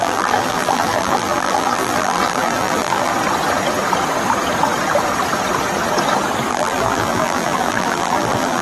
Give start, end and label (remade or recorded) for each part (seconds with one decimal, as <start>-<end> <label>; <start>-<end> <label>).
0.0-3.1 remade; 3.1-6.5 recorded; 6.5-8.6 remade